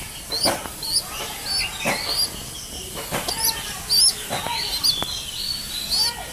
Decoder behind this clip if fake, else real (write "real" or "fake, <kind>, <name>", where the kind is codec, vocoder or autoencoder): real